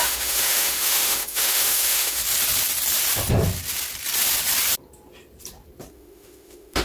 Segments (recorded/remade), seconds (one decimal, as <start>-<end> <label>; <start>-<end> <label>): 0.0-2.2 remade; 2.2-5.9 recorded; 5.9-6.8 remade